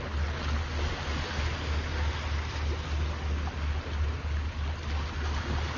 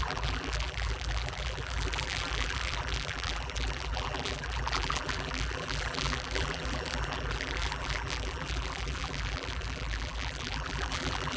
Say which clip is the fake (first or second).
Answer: second